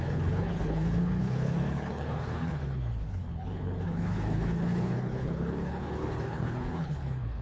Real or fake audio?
fake